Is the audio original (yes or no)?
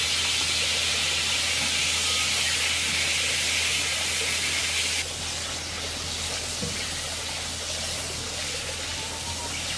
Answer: yes